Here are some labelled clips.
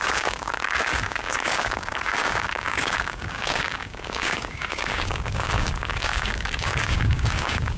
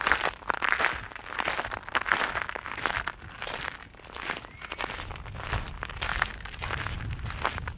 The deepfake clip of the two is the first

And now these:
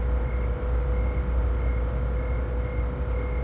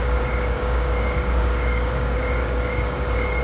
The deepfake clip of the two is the second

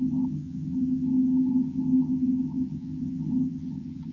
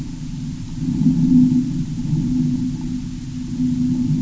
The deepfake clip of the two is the first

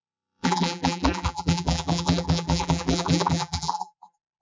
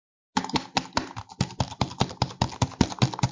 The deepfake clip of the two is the first